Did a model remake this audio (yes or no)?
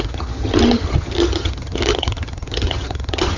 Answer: yes